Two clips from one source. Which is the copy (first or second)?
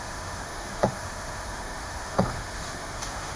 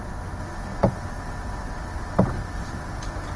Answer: first